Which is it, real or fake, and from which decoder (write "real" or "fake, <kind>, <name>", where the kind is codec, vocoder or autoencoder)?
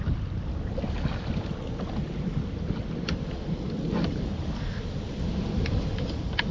real